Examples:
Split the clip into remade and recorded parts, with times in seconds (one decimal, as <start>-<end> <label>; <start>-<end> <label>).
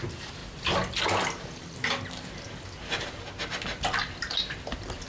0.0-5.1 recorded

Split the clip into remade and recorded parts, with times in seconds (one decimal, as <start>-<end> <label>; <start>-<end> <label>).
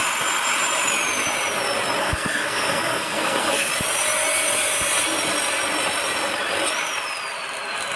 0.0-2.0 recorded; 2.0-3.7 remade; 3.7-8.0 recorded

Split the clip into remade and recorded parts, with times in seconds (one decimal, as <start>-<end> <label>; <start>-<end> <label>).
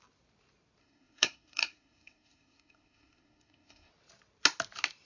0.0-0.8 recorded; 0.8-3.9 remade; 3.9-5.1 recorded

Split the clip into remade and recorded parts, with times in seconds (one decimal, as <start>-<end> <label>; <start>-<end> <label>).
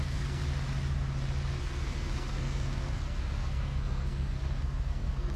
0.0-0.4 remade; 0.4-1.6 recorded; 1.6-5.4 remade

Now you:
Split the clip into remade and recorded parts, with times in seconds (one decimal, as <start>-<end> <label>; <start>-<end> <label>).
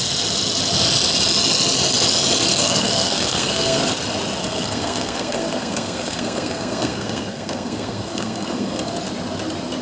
0.0-2.5 recorded; 2.5-3.8 remade; 3.8-4.4 recorded; 4.4-8.9 remade; 8.9-9.8 recorded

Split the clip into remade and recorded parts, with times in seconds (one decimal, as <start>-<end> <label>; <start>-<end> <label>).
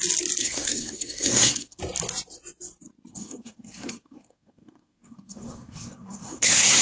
0.0-0.4 recorded; 0.4-1.8 remade; 1.8-3.1 recorded; 3.1-6.8 remade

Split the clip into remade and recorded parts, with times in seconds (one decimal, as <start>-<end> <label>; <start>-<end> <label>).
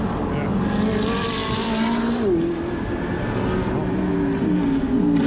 0.0-4.4 recorded; 4.4-5.3 remade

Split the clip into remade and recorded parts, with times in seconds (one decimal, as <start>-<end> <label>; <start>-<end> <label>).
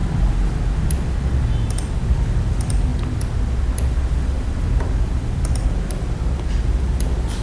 0.0-7.4 recorded